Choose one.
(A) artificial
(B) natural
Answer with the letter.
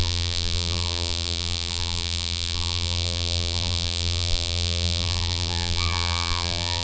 A